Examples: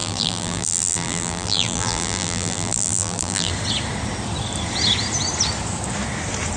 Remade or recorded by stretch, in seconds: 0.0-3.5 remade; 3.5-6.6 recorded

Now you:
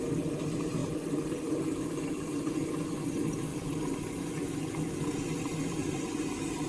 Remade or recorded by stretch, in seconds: 0.0-0.8 remade; 0.8-1.3 recorded; 1.3-3.5 remade; 3.5-6.0 recorded; 6.0-6.7 remade

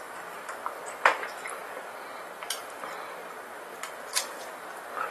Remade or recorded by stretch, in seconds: 0.0-1.1 recorded; 1.1-4.2 remade; 4.2-5.1 recorded